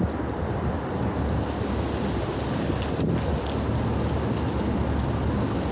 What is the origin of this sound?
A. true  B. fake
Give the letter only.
A